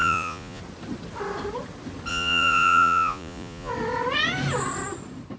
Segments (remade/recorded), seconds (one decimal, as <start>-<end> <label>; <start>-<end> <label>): 0.0-0.6 remade; 0.6-2.1 recorded; 2.1-3.7 remade; 3.7-5.4 recorded